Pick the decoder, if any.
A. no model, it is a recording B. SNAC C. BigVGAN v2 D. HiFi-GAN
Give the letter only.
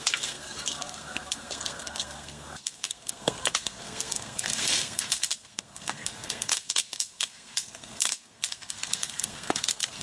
B